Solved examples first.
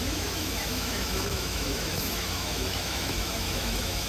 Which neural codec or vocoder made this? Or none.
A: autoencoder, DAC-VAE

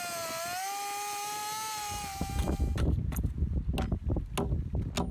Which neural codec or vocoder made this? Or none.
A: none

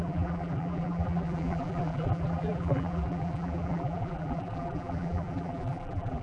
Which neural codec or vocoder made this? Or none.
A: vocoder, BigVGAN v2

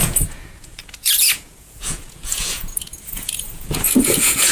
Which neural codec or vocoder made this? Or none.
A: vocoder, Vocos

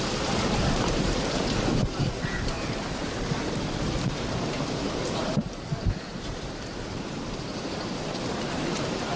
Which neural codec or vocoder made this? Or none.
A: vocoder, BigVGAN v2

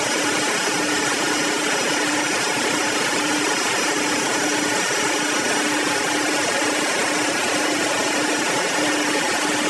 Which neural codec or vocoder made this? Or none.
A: none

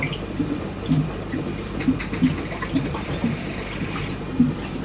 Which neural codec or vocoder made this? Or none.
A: vocoder, BigVGAN v2